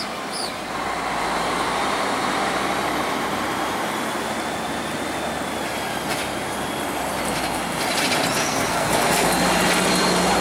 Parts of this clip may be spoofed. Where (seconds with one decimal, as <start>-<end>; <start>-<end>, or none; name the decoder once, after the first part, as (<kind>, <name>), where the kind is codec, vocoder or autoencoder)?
8.4-9.3 (codec, SNAC)